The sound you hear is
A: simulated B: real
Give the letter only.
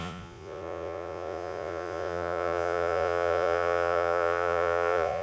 A